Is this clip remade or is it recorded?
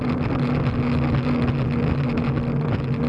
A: recorded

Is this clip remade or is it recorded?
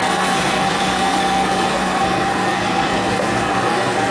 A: remade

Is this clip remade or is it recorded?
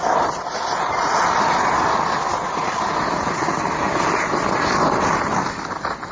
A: recorded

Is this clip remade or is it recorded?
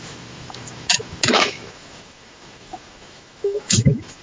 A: remade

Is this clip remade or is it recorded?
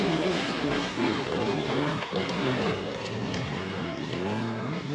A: remade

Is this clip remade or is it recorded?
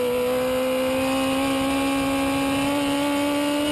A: recorded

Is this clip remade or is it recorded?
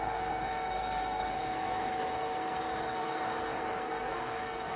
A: remade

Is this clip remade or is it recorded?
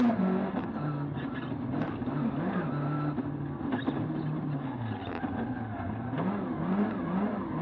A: recorded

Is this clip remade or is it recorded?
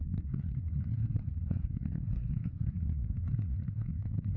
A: remade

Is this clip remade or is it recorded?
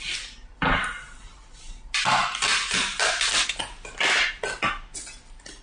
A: recorded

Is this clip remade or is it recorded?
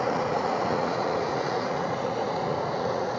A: remade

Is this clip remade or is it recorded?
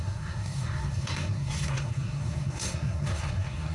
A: remade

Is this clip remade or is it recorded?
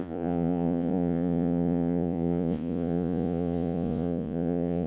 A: remade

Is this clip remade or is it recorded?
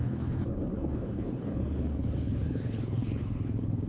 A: remade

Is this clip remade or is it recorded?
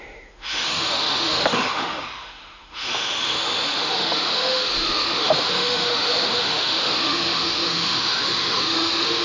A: remade